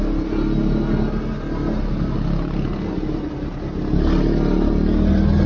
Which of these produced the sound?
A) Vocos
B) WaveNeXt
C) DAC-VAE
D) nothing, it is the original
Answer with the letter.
D